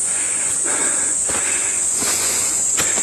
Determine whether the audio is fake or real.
fake